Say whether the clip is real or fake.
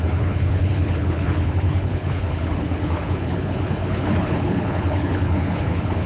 fake